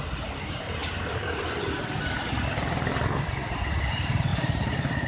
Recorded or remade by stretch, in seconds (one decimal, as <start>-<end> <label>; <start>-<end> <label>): 0.0-0.8 recorded; 0.8-3.9 remade; 3.9-4.3 recorded; 4.3-5.1 remade